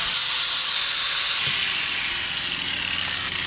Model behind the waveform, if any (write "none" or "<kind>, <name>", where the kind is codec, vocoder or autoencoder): none